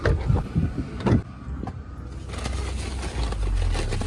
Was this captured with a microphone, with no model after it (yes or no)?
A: yes